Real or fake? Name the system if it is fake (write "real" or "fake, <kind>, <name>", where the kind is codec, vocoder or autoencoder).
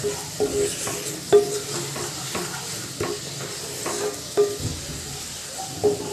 real